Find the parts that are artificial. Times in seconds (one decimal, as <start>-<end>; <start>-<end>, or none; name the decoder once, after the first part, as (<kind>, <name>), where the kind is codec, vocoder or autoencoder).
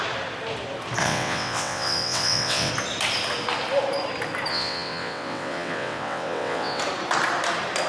1.0-2.7 (vocoder, WaveNeXt); 4.5-6.8